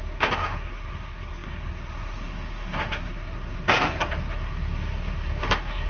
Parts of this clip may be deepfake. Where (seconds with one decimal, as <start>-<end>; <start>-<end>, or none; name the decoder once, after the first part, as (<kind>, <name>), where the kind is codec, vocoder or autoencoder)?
0.0-5.9 (codec, SNAC)